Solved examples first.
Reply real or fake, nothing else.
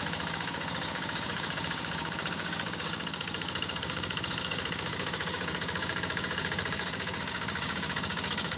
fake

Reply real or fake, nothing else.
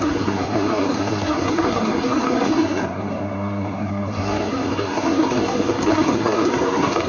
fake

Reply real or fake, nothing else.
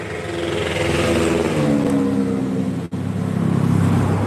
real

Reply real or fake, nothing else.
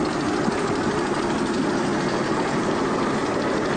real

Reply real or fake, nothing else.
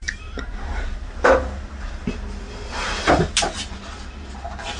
real